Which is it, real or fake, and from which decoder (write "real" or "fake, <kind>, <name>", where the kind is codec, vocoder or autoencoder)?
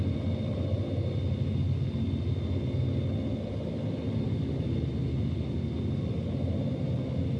real